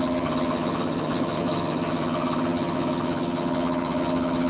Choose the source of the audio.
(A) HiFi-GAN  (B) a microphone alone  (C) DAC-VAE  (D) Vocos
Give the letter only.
A